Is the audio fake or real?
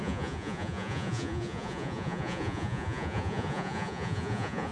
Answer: fake